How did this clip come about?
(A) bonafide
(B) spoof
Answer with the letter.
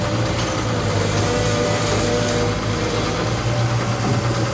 A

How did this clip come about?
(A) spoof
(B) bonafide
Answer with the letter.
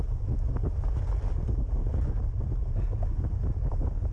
B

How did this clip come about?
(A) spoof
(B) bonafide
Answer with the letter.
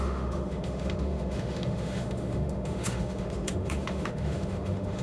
A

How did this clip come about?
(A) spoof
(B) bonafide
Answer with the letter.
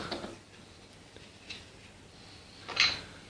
B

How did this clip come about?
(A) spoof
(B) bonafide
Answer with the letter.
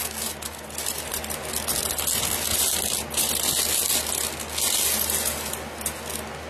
B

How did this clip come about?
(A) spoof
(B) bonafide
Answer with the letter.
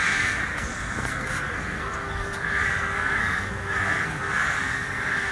A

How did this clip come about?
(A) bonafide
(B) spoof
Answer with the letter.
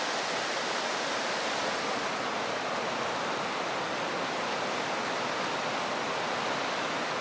A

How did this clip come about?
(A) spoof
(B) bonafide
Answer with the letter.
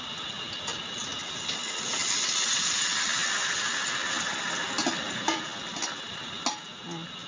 B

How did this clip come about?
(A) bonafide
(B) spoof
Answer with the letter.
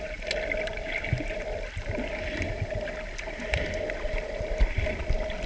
A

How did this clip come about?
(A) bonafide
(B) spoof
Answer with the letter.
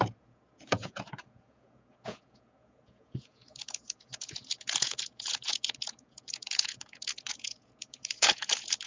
B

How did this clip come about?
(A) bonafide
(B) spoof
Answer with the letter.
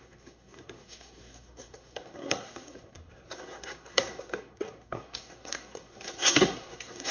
B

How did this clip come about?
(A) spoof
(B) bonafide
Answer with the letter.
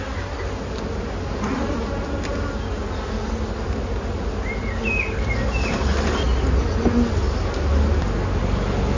B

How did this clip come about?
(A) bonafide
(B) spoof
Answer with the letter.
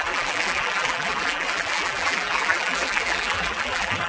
B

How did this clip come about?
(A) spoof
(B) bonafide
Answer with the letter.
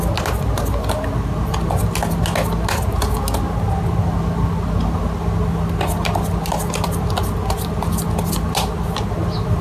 B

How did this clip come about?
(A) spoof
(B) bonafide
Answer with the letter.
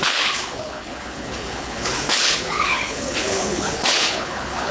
A